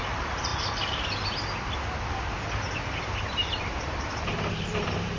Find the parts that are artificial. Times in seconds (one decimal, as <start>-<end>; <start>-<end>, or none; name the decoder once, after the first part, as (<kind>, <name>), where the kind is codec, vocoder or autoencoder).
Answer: 0.0-0.5 (vocoder, BigVGAN v2); 3.6-5.2